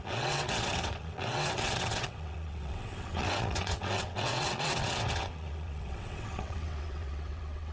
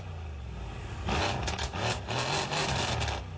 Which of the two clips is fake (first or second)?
first